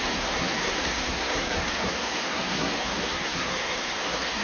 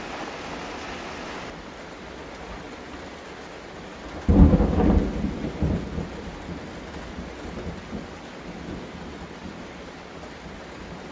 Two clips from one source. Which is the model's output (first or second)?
first